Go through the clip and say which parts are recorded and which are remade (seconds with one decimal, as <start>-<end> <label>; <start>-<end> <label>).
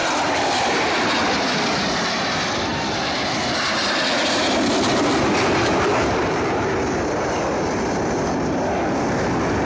0.0-0.9 remade; 0.9-2.7 recorded; 2.7-5.2 remade; 5.2-9.6 recorded